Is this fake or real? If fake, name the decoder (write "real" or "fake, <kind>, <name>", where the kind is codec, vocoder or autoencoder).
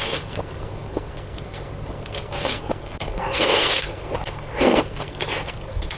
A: fake, codec, SNAC